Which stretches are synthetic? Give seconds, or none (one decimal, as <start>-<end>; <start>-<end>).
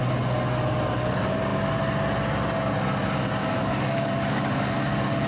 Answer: 3.4-5.3